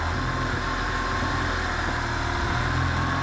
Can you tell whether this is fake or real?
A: real